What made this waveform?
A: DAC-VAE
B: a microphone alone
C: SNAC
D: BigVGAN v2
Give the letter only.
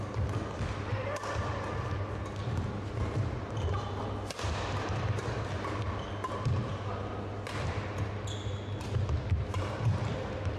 B